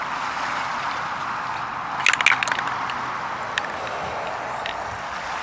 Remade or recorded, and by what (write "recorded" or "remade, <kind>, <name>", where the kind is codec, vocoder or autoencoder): recorded